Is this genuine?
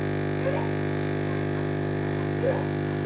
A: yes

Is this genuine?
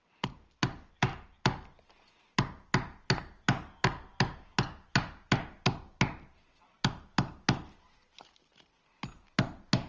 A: yes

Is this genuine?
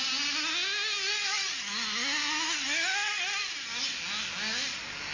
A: yes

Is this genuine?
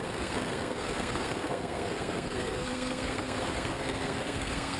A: no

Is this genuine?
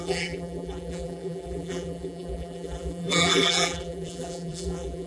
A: no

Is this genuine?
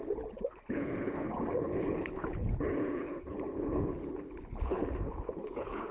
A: no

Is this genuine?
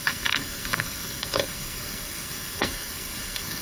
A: no